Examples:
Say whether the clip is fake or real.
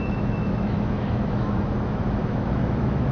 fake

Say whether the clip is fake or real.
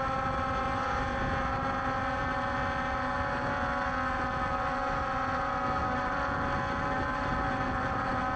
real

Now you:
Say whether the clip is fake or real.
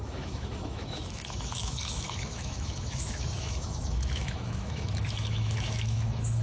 fake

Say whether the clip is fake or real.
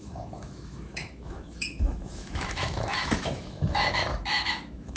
fake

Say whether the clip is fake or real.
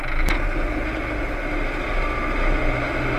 real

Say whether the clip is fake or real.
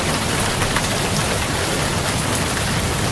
real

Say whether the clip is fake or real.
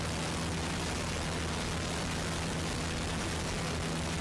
real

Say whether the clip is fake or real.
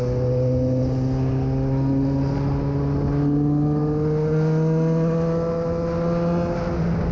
real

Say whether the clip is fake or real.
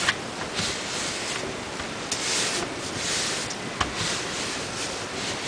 real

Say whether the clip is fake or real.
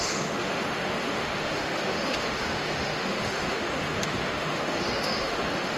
fake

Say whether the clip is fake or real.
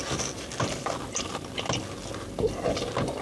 real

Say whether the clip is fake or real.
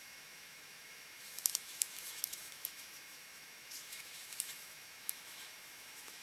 fake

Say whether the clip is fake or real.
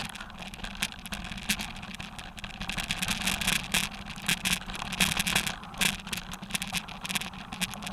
real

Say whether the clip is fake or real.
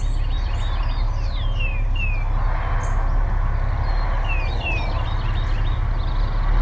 real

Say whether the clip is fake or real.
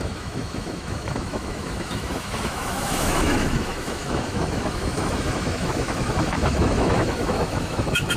fake